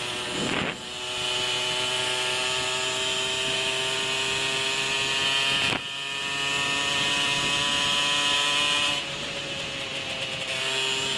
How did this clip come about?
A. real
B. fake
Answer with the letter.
A